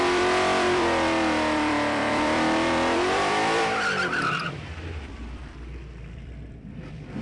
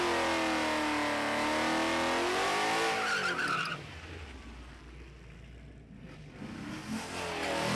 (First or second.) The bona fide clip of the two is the second